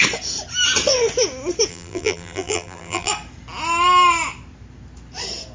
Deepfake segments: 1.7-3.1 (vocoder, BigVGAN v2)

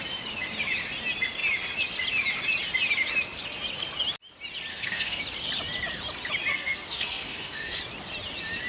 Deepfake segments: 4.7-5.2 (codec, SNAC); 6.5-7.8

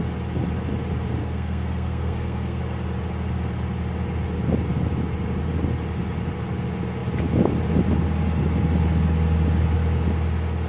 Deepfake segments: 1.2-2.6 (codec, SNAC)

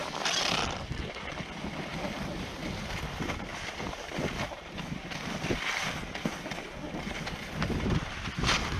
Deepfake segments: 0.0-1.4 (vocoder, BigVGAN v2); 1.9-2.5; 3.5-5.3